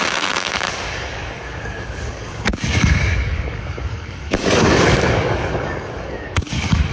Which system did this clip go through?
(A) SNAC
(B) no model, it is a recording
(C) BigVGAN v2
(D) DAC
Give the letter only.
D